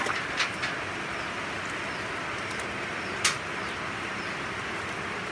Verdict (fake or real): real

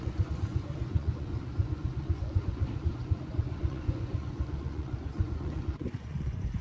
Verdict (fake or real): fake